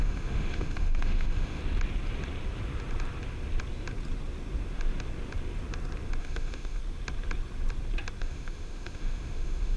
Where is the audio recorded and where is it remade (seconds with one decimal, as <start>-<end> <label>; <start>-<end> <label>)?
0.0-1.6 remade; 1.6-6.2 recorded; 6.2-6.8 remade; 6.8-8.2 recorded; 8.2-9.8 remade